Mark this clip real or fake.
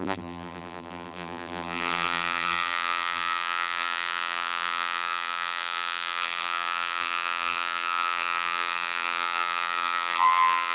fake